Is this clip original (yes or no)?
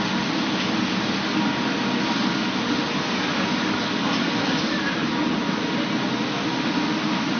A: yes